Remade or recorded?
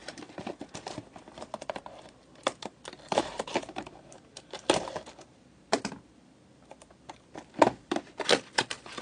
remade